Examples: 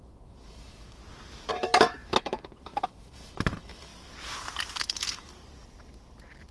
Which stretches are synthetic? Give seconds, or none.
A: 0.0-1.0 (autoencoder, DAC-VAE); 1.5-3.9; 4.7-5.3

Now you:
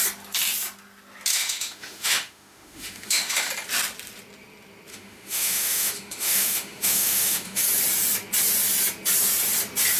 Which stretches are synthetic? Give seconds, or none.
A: 1.3-3.5 (autoencoder, DAC-VAE); 4.9-7.6

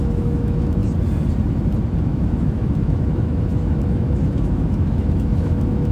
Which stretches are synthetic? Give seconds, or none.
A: 0.0-0.8 (autoencoder, DAC-VAE); 2.0-5.9

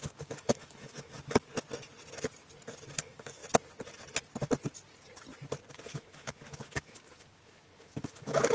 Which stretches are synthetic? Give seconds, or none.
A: 0.0-1.5 (autoencoder, DAC-VAE); 3.0-3.4; 5.7-8.5

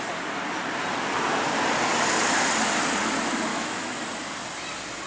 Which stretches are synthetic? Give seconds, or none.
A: 3.5-4.0 (autoencoder, DAC-VAE)